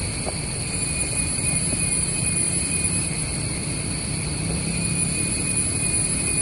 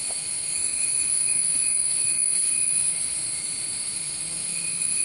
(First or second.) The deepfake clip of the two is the second